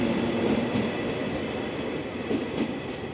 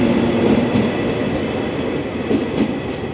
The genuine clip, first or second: second